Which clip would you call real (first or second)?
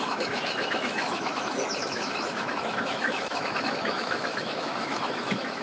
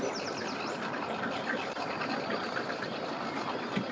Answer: second